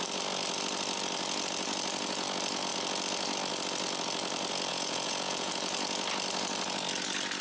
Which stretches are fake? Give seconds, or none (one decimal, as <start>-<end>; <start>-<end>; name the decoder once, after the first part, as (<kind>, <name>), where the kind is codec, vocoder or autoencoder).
4.7-5.5 (vocoder, Vocos)